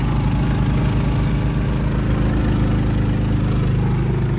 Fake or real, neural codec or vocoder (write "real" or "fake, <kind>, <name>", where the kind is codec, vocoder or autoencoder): real